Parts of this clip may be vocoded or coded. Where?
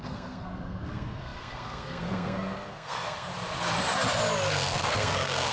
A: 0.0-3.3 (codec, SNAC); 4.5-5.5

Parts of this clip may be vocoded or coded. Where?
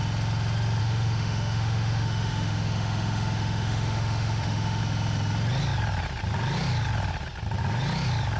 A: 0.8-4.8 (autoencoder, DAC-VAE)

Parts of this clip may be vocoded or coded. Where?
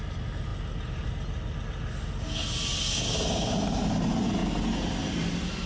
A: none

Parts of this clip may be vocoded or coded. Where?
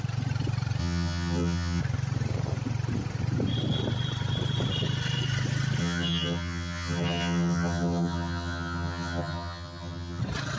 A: 0.8-1.8 (vocoder, HiFi-GAN); 5.8-10.2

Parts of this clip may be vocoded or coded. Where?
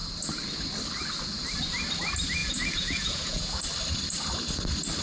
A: 2.4-3.6 (vocoder, Vocos)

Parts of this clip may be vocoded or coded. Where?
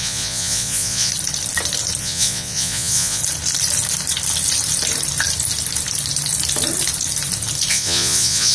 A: 0.0-1.1 (vocoder, Vocos); 2.0-3.2; 7.7-8.5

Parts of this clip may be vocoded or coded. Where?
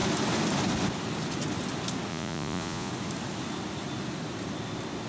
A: 2.1-2.9 (vocoder, Vocos)